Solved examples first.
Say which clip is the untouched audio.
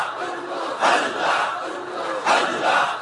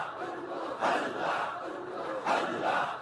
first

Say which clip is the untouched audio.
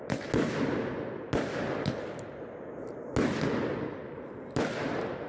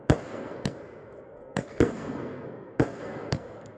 first